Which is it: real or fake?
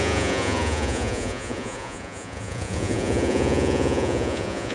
fake